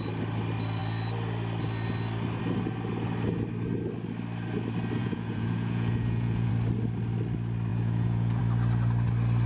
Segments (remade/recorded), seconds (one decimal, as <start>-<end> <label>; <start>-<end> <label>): 0.0-5.0 recorded; 5.0-6.5 remade; 6.5-7.7 recorded; 7.7-8.4 remade; 8.4-9.5 recorded